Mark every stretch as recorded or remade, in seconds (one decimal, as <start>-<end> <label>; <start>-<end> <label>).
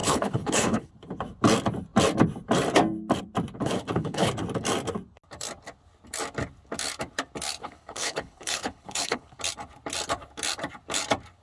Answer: 0.0-0.9 remade; 0.9-3.6 recorded; 3.6-4.3 remade; 4.3-7.6 recorded; 7.6-9.4 remade; 9.4-11.4 recorded